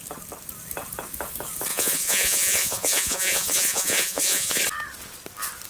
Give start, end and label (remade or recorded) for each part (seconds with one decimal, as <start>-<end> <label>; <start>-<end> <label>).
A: 0.0-1.7 recorded; 1.7-4.6 remade; 4.6-5.7 recorded